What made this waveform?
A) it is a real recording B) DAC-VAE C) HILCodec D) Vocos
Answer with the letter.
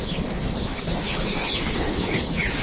C